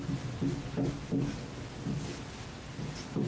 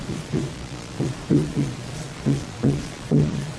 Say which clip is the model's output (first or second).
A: second